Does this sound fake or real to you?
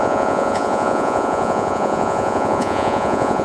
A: fake